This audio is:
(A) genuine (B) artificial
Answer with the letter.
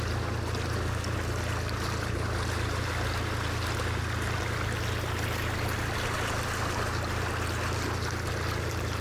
A